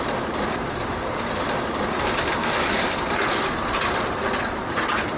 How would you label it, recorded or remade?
recorded